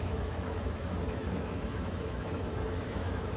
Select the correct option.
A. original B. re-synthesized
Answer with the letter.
B